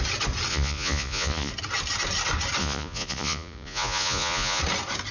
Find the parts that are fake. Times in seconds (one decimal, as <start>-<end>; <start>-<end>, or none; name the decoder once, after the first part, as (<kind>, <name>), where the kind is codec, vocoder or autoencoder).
0.5-1.5 (vocoder, Vocos); 2.6-4.6